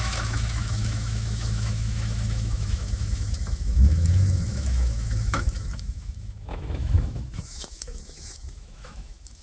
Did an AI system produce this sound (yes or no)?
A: yes